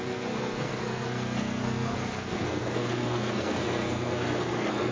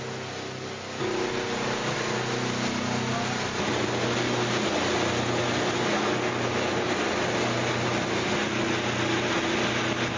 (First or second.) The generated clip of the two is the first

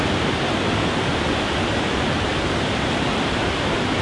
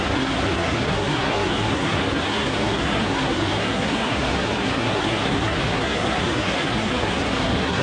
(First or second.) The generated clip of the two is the second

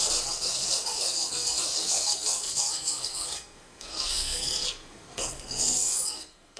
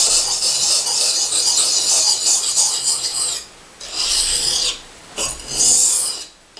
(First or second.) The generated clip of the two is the first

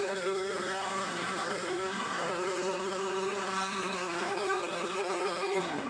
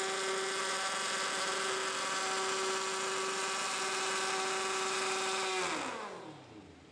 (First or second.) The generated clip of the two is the first